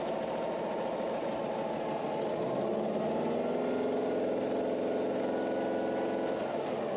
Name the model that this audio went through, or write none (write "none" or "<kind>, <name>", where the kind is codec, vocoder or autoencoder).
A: none